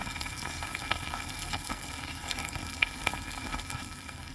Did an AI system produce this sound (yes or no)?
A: yes